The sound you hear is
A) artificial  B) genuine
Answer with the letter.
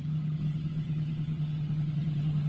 A